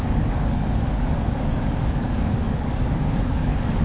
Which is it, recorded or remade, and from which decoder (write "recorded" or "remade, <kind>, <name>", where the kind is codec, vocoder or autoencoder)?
remade, codec, DAC